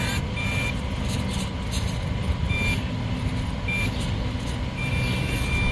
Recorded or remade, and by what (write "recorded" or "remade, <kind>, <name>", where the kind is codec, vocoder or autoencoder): recorded